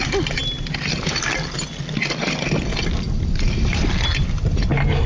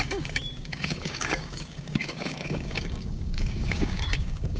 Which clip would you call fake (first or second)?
second